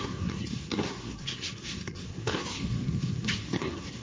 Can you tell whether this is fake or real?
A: fake